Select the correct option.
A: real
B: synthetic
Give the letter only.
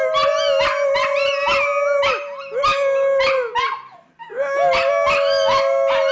A